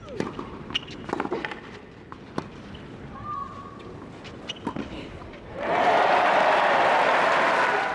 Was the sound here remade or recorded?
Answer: recorded